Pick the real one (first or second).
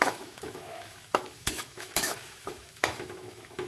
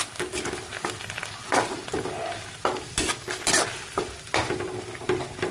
second